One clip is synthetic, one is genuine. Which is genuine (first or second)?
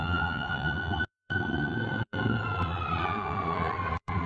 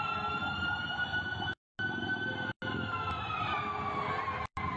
second